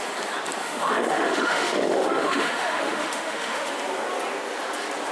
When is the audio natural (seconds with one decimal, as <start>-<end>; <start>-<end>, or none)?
0.0-0.6; 3.7-5.1